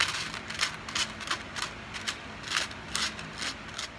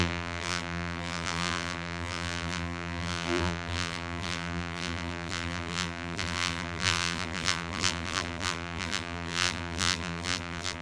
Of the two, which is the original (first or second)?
first